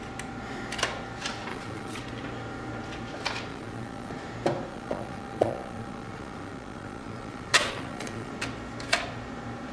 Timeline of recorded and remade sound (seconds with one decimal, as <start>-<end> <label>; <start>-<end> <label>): 0.0-1.5 recorded; 1.5-2.0 remade; 2.0-3.5 recorded; 3.5-4.1 remade; 4.1-4.7 recorded; 4.7-8.3 remade; 8.3-9.7 recorded